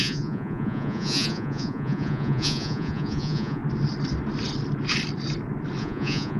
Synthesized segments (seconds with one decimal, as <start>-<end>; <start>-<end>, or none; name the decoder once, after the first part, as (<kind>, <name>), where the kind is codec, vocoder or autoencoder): 0.0-3.6 (vocoder, Vocos); 5.8-6.4